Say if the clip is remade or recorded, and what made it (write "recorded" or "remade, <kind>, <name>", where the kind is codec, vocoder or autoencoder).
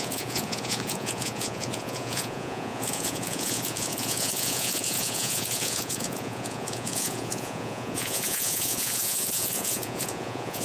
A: remade, vocoder, Vocos